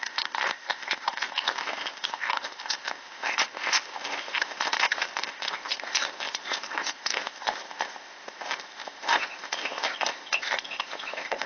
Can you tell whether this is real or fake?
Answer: fake